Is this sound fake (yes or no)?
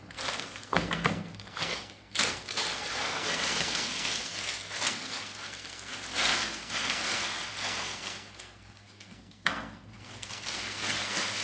yes